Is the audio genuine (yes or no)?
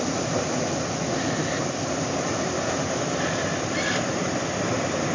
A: yes